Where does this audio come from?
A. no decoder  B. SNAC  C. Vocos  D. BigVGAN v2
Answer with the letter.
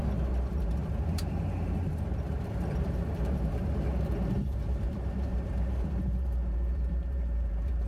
D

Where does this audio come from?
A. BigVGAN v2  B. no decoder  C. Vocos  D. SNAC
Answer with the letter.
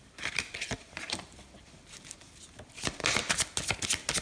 B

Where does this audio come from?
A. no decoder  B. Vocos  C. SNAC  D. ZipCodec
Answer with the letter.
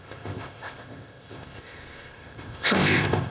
D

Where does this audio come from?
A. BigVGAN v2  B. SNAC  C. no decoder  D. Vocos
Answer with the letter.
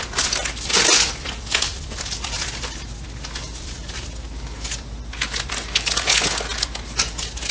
C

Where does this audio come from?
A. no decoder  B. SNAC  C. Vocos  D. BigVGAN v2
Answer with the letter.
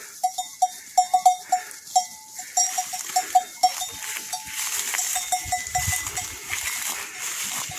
A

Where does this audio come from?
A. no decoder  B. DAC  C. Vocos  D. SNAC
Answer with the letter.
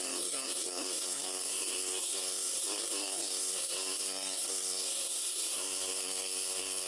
D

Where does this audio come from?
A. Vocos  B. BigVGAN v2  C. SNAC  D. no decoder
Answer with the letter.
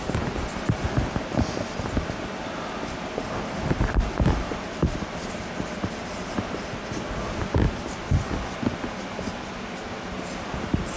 D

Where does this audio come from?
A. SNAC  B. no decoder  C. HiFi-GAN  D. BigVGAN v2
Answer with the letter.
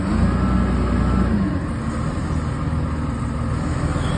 B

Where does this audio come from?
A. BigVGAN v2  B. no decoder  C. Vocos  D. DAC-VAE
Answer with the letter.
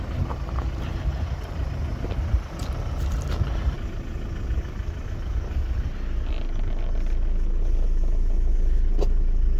B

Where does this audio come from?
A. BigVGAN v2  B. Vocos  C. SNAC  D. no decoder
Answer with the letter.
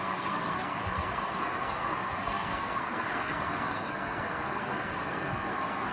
C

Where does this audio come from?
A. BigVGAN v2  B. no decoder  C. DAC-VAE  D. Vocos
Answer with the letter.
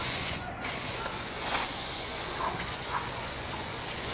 D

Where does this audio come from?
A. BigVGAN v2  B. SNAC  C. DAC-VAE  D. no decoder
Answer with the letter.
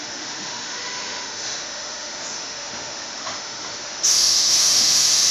C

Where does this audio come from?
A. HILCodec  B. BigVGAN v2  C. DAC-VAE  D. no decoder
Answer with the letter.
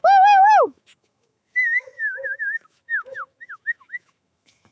C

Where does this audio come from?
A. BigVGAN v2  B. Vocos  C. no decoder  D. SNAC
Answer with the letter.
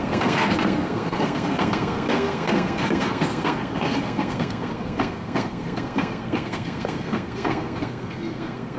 D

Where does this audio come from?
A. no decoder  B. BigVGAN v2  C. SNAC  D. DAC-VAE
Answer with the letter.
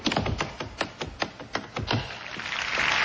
A